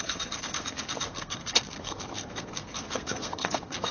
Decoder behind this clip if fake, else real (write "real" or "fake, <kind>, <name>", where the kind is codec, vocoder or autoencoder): fake, codec, SNAC